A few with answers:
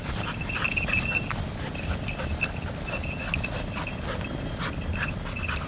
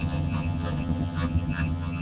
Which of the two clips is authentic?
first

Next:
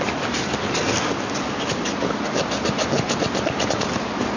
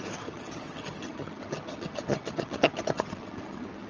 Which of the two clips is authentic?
first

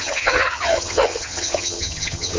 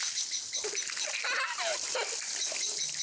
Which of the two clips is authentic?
second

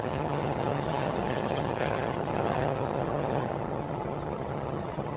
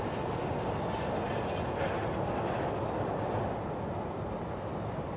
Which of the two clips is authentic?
second